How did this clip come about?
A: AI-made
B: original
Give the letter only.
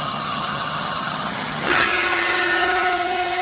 A